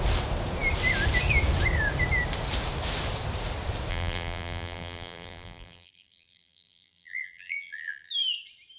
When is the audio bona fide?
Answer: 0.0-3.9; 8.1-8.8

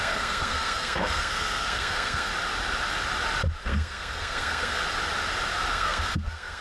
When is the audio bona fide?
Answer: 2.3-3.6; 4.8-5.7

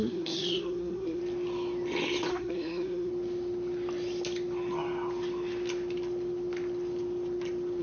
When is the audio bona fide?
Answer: 1.2-2.3; 3.1-7.8

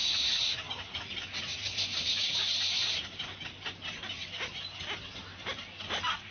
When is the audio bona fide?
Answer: 0.0-1.9; 3.1-5.3

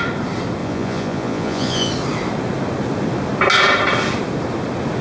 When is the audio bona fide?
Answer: 0.0-0.6; 1.9-5.0

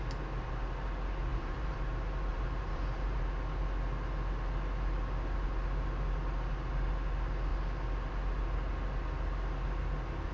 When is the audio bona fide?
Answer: 0.0-1.3; 1.8-2.3; 3.2-10.3